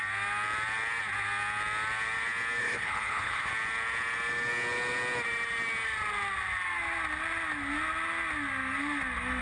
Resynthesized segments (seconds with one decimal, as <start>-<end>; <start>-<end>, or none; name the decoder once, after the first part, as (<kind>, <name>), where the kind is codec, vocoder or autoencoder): 2.6-3.5 (codec, HILCodec)